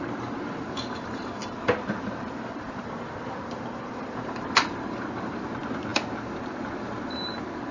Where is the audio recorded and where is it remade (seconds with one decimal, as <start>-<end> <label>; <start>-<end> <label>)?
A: 0.0-7.7 remade